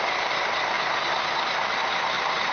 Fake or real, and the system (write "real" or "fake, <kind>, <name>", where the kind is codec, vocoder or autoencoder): fake, vocoder, BigVGAN v2